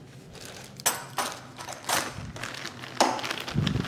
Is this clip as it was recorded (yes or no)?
yes